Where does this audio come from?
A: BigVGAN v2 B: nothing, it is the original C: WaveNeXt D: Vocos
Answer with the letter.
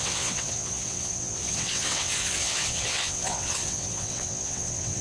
C